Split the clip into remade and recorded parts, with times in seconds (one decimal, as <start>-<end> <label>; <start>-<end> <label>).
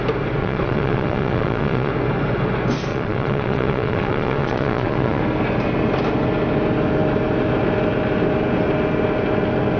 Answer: 0.0-0.4 recorded; 0.4-1.9 remade; 1.9-2.9 recorded; 2.9-5.2 remade; 5.2-9.8 recorded